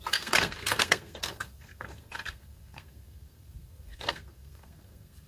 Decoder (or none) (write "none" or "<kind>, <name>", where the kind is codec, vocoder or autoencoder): codec, SNAC